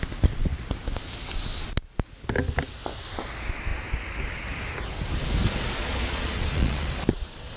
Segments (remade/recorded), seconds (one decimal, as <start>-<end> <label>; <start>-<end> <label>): 0.0-5.8 recorded; 5.8-7.0 remade; 7.0-7.6 recorded